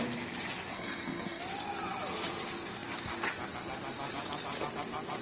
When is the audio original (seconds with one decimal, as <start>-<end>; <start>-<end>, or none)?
0.0-0.7; 1.4-5.2